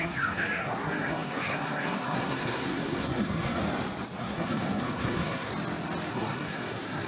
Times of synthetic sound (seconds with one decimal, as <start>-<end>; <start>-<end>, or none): 0.0-3.6; 4.2-5.5; 6.1-7.1